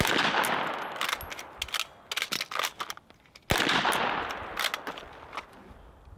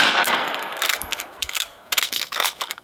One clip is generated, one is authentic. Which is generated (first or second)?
second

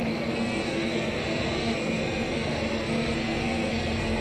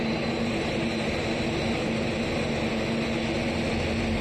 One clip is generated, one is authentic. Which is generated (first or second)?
first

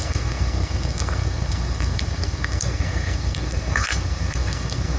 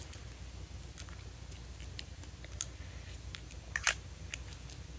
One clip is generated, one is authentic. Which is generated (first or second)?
first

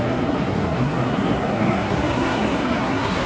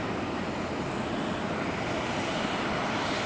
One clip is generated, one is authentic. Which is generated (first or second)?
first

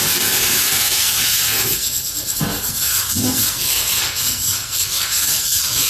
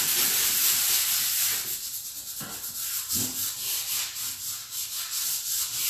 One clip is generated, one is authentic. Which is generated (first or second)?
first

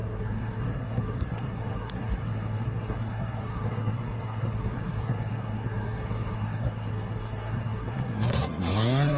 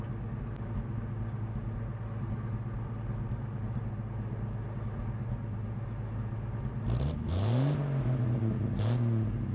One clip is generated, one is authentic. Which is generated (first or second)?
first